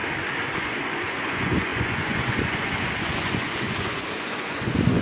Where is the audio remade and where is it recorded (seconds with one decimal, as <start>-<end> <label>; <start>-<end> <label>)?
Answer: 0.0-0.6 recorded; 0.6-5.0 remade